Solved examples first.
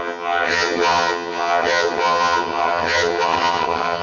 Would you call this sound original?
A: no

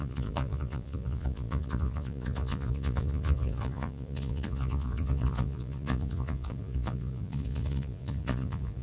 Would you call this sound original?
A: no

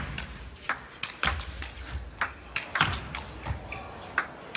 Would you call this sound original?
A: yes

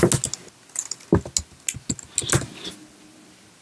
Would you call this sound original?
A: yes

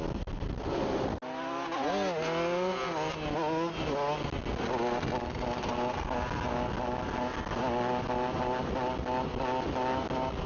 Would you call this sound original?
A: yes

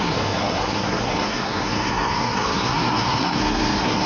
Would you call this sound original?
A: no